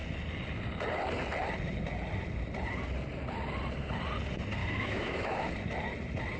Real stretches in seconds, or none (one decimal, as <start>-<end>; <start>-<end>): 0.0-4.6; 5.5-6.4